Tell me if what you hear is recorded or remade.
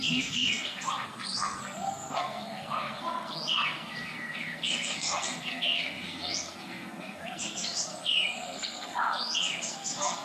remade